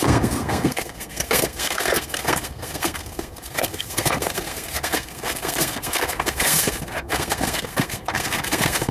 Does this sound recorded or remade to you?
remade